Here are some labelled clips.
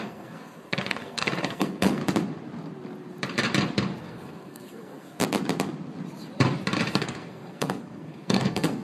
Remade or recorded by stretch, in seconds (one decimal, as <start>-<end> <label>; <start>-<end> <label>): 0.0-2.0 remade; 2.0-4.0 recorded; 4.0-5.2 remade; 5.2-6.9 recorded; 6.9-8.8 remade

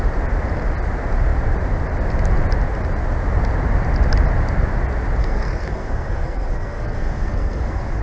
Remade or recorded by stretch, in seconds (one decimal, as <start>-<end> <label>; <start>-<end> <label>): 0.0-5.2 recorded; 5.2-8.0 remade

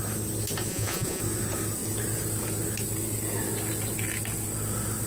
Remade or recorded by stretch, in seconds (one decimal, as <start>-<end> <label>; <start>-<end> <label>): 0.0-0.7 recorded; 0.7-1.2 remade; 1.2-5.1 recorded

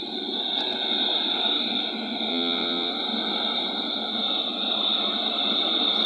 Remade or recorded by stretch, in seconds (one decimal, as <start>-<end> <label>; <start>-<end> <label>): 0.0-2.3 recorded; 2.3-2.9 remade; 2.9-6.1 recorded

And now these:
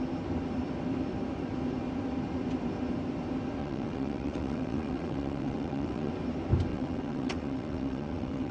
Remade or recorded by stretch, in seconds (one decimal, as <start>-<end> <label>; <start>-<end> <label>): 0.0-3.6 recorded; 3.6-6.1 remade; 6.1-6.7 recorded; 6.7-8.5 remade

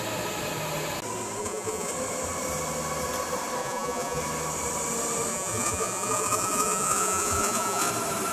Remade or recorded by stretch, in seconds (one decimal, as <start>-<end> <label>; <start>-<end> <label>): 0.0-1.4 recorded; 1.4-1.9 remade; 1.9-3.6 recorded; 3.6-4.2 remade; 4.2-5.3 recorded; 5.3-7.9 remade; 7.9-8.3 recorded